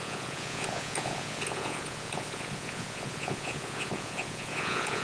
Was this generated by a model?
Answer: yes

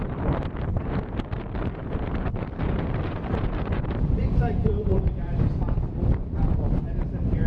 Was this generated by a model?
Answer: yes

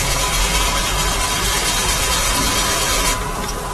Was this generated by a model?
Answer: yes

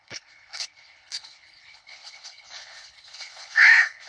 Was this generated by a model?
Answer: yes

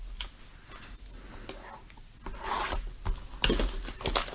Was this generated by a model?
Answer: no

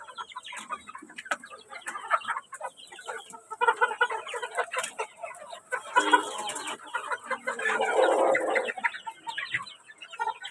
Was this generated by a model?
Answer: no